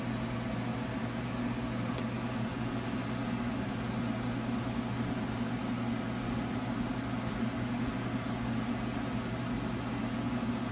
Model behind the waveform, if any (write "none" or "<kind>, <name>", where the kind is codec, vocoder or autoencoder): none